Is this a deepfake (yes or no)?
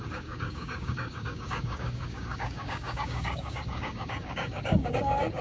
yes